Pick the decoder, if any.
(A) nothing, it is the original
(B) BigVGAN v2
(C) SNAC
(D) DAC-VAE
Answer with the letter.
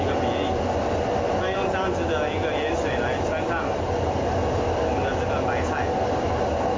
A